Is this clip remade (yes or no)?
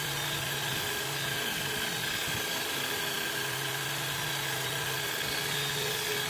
no